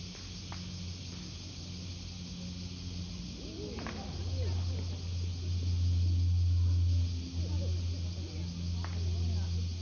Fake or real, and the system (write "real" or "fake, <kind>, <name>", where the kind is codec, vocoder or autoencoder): real